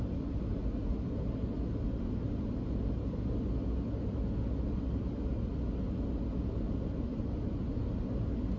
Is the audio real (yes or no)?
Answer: yes